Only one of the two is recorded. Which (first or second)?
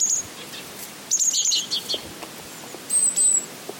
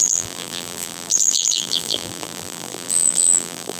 first